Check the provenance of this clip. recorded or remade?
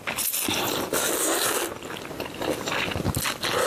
recorded